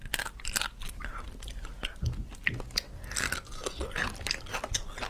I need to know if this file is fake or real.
real